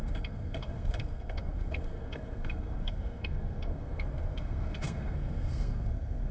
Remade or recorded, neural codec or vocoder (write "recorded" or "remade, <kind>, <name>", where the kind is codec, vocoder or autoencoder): remade, codec, SNAC